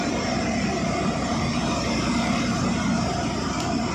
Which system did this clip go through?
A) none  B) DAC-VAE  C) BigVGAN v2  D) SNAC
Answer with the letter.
C